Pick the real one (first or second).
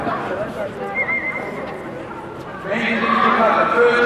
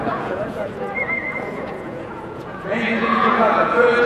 first